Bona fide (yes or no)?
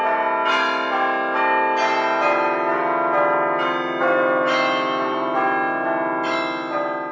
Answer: yes